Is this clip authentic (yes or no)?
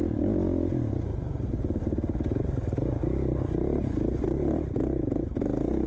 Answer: yes